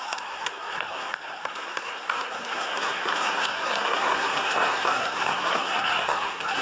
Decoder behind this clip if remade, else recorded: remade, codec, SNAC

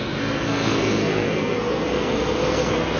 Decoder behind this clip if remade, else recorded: remade, codec, SNAC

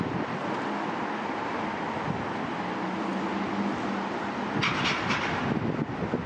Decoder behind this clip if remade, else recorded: recorded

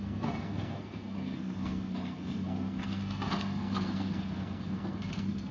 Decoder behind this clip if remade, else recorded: remade, codec, SNAC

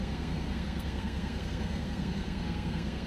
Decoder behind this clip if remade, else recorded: remade, codec, SNAC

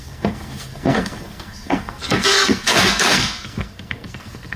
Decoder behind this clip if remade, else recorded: remade, codec, SNAC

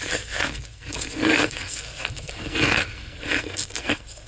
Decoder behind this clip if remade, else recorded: remade, codec, SNAC